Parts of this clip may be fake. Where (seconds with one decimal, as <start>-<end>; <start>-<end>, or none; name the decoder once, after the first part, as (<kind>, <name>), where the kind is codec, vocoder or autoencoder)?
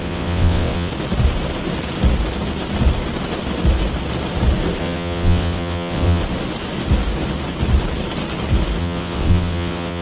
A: 0.0-0.9 (vocoder, WaveNeXt); 4.8-6.2; 8.8-10.0